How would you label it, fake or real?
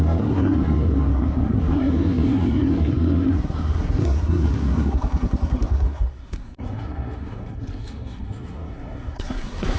fake